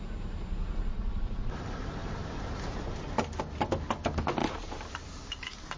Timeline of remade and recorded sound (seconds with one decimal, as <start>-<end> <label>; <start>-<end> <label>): 0.0-0.9 recorded; 0.9-1.5 remade; 1.5-2.0 recorded; 2.0-3.4 remade; 3.4-4.4 recorded; 4.4-5.8 remade